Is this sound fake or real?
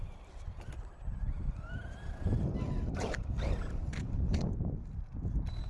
fake